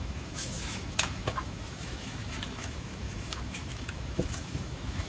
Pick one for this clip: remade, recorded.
remade